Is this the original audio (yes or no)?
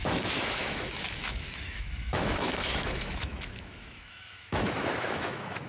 no